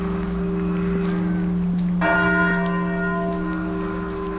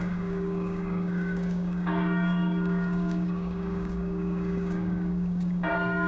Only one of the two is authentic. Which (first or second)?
first